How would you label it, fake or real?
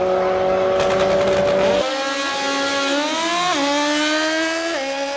real